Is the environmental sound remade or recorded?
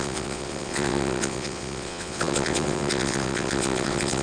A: remade